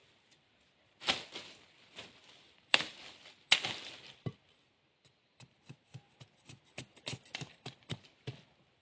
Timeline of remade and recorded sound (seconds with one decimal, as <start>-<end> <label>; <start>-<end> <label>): 0.0-8.8 recorded

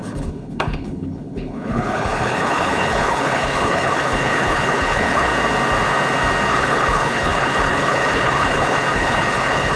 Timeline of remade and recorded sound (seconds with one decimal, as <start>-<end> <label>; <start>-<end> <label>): 0.0-5.3 remade; 5.3-6.5 recorded; 6.5-9.8 remade

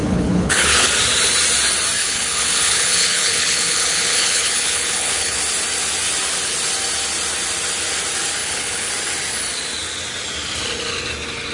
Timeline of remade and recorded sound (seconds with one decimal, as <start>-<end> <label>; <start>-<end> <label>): 0.0-0.9 remade; 0.9-2.0 recorded; 2.0-5.4 remade; 5.4-8.4 recorded; 8.4-8.9 remade; 8.9-11.5 recorded

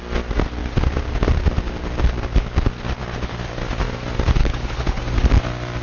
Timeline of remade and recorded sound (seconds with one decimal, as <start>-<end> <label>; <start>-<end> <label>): 0.0-4.4 recorded; 4.4-5.0 remade; 5.0-5.8 recorded

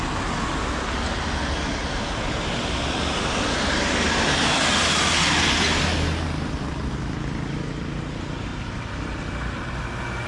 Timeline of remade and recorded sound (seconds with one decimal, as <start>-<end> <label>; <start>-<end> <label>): 0.0-10.3 recorded

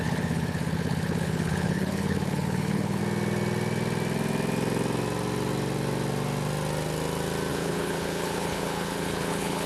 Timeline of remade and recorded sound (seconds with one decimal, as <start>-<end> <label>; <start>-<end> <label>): 0.0-3.0 remade; 3.0-7.5 recorded; 7.5-9.7 remade

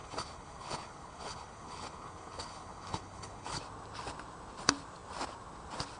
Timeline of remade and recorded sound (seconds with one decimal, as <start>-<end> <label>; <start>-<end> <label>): 0.0-3.6 remade; 3.6-6.0 recorded